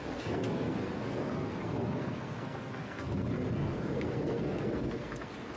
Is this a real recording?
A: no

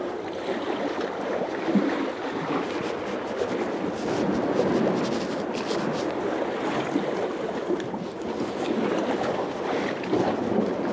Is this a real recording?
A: yes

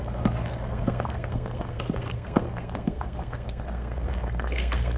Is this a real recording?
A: no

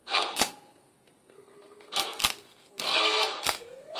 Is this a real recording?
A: no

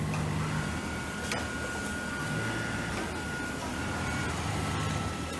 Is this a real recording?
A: yes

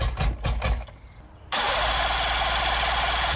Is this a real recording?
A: yes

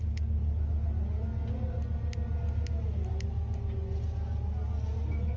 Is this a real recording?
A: yes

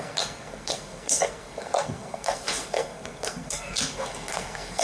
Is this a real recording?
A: no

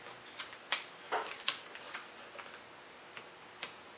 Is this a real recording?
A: yes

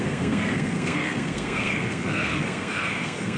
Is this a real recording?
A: no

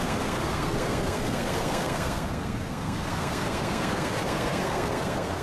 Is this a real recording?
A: no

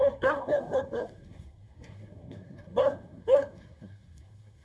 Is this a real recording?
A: no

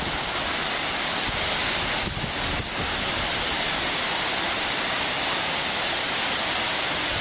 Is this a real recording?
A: yes